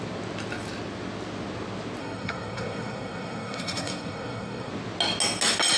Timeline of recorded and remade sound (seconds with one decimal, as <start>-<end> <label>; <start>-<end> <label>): 0.0-2.0 recorded; 2.0-4.7 remade; 4.7-5.8 recorded